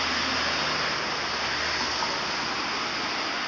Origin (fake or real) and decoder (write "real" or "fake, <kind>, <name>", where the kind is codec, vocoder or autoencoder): real